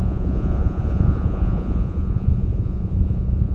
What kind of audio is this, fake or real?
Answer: fake